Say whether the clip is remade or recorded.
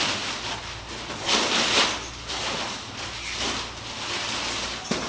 recorded